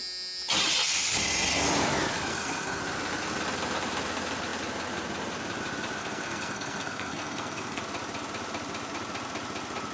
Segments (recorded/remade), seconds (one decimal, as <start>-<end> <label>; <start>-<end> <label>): 0.0-2.3 recorded; 2.3-2.8 remade; 2.8-6.0 recorded; 6.0-7.8 remade; 7.8-9.9 recorded

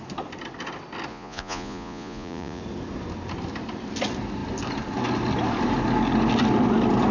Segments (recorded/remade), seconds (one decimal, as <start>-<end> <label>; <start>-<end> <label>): 0.0-1.1 recorded; 1.1-2.6 remade; 2.6-7.1 recorded

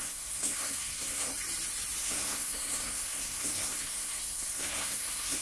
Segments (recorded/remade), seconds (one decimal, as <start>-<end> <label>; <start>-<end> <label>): 0.0-1.3 remade; 1.3-2.0 recorded; 2.0-5.4 remade

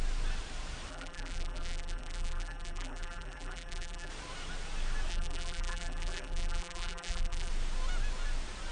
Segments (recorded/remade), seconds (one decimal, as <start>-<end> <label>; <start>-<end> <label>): 0.0-0.9 recorded; 0.9-4.1 remade; 4.1-5.1 recorded; 5.1-7.5 remade; 7.5-8.7 recorded

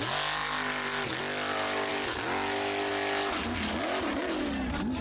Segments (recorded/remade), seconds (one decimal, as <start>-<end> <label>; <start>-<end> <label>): 0.0-5.0 recorded